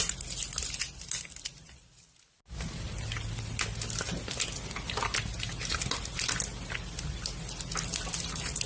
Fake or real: real